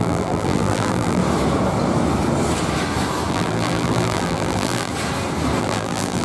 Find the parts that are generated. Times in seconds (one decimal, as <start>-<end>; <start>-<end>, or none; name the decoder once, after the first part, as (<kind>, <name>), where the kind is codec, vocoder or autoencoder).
0.0-1.2 (vocoder, BigVGAN v2); 3.3-4.9; 5.6-6.2